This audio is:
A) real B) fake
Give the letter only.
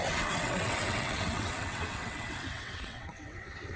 B